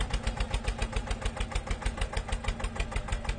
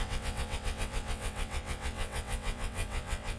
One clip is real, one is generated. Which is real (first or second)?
first